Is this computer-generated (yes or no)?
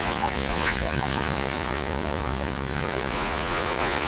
yes